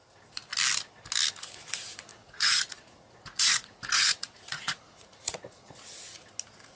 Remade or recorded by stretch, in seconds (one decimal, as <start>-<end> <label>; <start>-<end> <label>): 0.0-2.1 recorded; 2.1-5.7 remade; 5.7-6.8 recorded